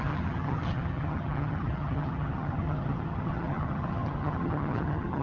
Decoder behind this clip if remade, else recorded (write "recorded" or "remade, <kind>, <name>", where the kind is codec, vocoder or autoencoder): remade, vocoder, HiFi-GAN